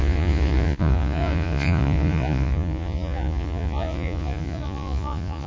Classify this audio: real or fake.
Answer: fake